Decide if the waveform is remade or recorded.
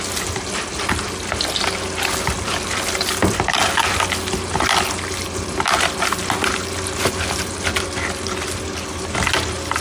recorded